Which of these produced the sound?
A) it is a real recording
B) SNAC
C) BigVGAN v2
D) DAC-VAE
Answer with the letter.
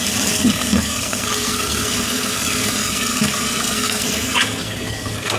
B